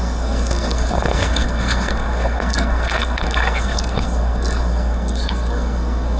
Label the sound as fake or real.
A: fake